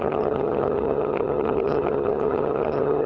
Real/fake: fake